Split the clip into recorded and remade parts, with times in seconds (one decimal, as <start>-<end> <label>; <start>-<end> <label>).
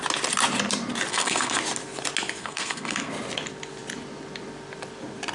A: 0.0-1.1 recorded; 1.1-1.6 remade; 1.6-2.4 recorded; 2.4-3.1 remade; 3.1-5.3 recorded